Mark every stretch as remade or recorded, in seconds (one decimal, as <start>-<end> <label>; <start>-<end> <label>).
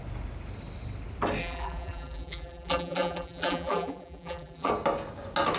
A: 0.0-1.4 recorded; 1.4-4.7 remade; 4.7-5.6 recorded